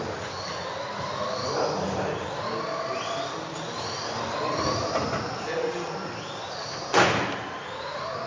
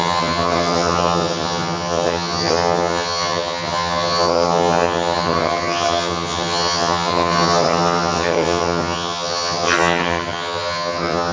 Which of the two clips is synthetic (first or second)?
second